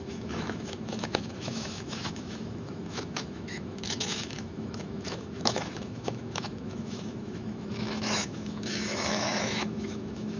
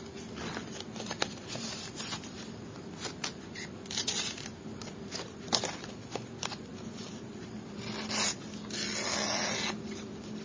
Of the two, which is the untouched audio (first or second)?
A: second